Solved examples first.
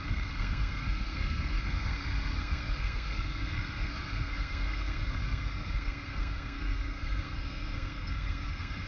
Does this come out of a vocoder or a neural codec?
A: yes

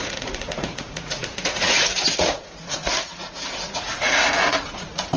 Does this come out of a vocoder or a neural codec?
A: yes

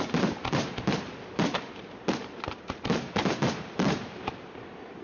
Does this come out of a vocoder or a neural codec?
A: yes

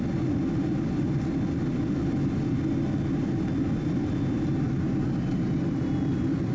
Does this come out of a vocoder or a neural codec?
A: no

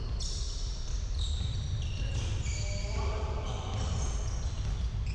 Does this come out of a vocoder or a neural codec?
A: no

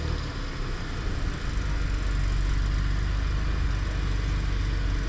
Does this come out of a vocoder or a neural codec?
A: no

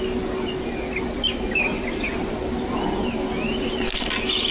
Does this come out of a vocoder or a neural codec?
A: no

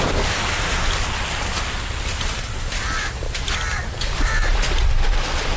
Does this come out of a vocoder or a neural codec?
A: no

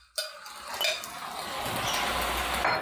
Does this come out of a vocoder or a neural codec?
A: no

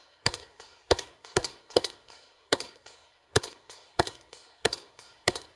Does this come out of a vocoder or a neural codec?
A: yes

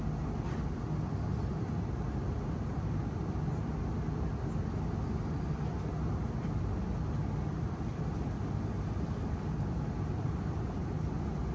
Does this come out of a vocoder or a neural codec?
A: no